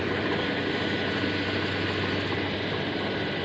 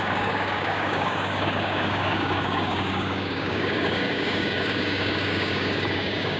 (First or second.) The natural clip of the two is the first